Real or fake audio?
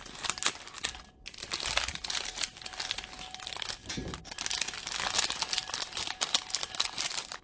real